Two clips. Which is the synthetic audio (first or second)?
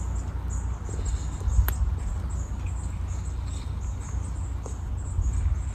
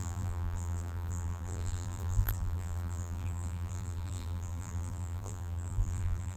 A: second